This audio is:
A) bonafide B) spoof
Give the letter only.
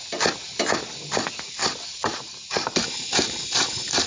A